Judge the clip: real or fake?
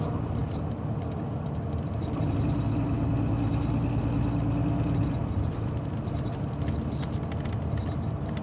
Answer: real